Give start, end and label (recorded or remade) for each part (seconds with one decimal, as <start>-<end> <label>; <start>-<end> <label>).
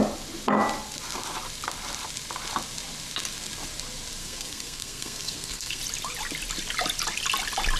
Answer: 0.0-4.2 recorded; 4.2-5.8 remade; 5.8-7.8 recorded